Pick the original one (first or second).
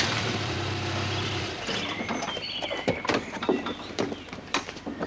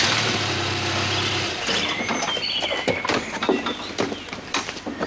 second